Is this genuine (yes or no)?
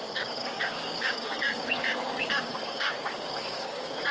no